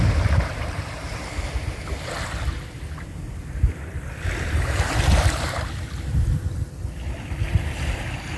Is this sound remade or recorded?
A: recorded